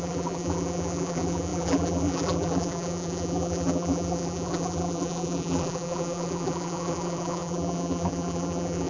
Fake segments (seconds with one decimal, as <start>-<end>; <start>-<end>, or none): 0.0-8.9